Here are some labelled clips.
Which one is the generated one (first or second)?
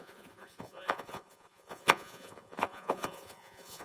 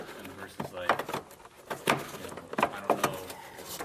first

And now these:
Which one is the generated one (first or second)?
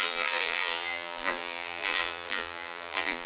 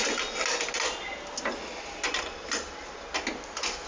first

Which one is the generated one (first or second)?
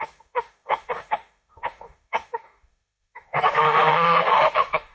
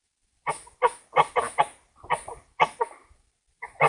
first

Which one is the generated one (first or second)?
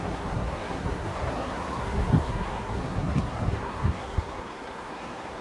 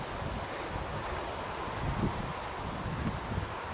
first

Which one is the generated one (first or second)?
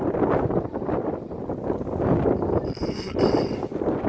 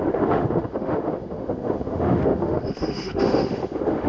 second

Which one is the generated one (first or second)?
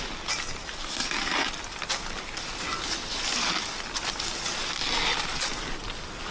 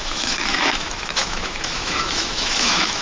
second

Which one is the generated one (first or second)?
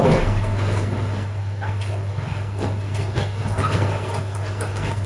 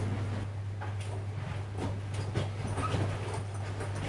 first